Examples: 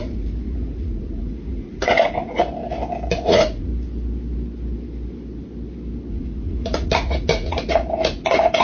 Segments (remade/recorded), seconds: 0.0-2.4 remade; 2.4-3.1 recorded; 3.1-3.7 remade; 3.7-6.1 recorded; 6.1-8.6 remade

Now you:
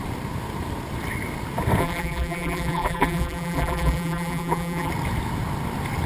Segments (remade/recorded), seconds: 0.0-1.8 recorded; 1.8-4.9 remade; 4.9-6.1 recorded

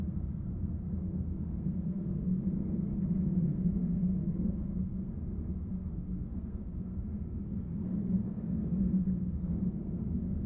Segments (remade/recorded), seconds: 0.0-2.9 remade; 2.9-3.5 recorded; 3.5-10.5 remade

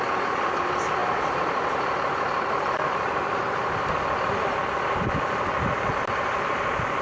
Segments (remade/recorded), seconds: 0.0-1.0 recorded; 1.0-3.9 remade; 3.9-7.0 recorded